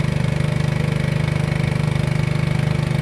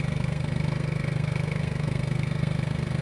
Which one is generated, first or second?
second